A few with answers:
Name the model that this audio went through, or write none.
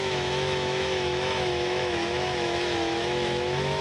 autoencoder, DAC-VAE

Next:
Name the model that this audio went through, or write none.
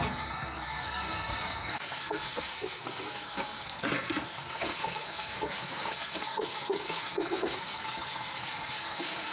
codec, SNAC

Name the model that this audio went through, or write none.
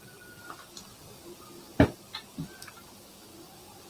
none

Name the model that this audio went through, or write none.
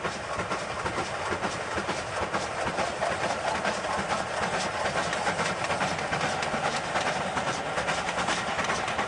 none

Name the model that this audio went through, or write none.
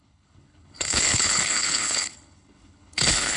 codec, HILCodec